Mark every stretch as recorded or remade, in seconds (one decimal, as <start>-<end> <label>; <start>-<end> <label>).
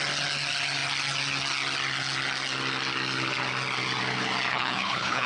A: 0.0-4.5 recorded; 4.5-5.3 remade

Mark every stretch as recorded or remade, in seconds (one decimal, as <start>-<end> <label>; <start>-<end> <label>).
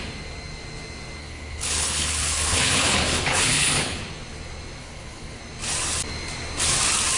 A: 0.0-1.2 recorded; 1.2-4.0 remade; 4.0-4.8 recorded; 4.8-5.4 remade; 5.4-7.2 recorded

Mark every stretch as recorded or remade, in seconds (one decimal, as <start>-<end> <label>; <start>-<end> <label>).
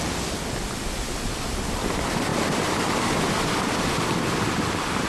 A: 0.0-5.1 recorded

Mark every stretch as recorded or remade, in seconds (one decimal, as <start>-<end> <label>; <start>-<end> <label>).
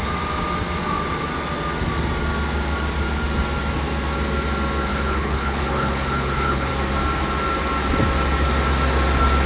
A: 0.0-4.9 recorded; 4.9-6.7 remade; 6.7-9.5 recorded